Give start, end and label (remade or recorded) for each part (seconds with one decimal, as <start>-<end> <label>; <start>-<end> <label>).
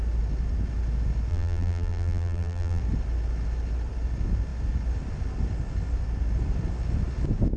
0.0-1.3 recorded; 1.3-2.8 remade; 2.8-7.6 recorded